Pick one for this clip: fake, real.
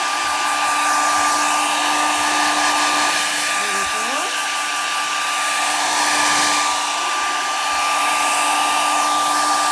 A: real